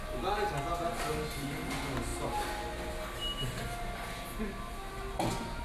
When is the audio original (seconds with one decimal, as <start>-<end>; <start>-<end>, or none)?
0.0-5.6

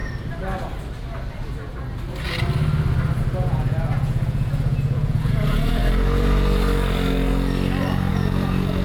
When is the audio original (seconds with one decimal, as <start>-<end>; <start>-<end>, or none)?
0.0-3.2; 5.8-8.1

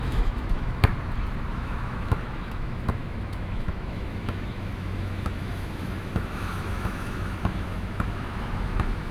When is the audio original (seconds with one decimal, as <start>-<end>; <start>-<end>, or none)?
0.9-1.5

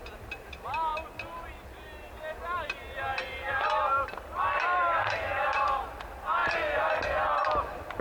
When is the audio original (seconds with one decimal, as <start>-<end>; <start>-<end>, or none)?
0.0-3.1; 6.0-6.4; 6.9-8.0

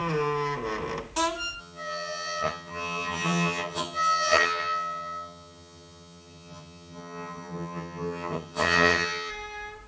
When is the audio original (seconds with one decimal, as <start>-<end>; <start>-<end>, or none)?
0.0-1.6; 9.3-9.9

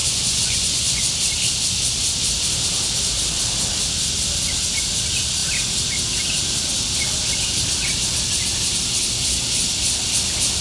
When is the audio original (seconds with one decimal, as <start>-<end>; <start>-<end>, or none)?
1.0-10.6

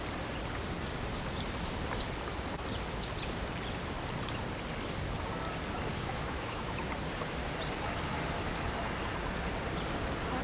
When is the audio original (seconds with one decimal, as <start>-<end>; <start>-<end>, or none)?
0.0-5.9; 6.8-10.4

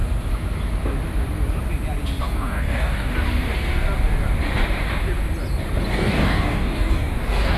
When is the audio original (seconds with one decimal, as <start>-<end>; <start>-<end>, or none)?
0.0-2.2; 3.1-5.9